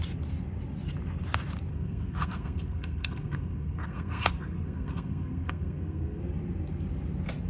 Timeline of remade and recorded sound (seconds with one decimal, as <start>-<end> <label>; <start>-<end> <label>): 0.0-1.7 recorded; 1.7-6.2 remade; 6.2-7.5 recorded